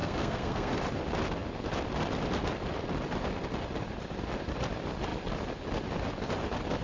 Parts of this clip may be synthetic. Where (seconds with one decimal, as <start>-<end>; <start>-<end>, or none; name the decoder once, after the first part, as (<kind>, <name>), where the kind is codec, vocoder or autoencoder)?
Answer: 0.0-0.8 (codec, SNAC)